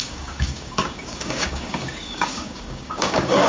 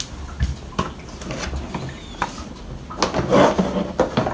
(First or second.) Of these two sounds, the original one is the second